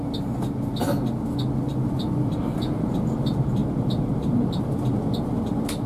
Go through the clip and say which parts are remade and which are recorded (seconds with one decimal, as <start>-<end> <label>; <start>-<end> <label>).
0.0-5.9 recorded

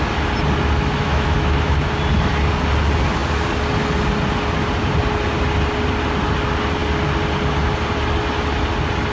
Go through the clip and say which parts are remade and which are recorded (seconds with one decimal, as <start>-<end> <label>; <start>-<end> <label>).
0.0-1.0 recorded; 1.0-1.9 remade; 1.9-9.1 recorded

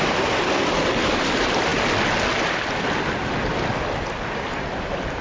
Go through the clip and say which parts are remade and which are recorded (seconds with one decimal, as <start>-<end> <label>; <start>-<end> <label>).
0.0-5.2 recorded

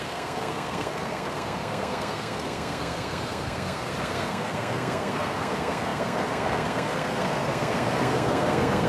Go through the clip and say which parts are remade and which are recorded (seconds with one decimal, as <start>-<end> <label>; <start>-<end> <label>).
0.0-8.9 remade